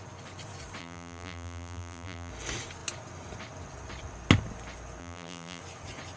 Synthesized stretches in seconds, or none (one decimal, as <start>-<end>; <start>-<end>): 0.8-2.3; 5.0-5.6